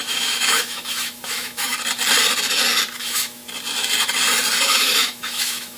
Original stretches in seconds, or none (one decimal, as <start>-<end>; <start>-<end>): 1.7-3.0; 3.4-4.6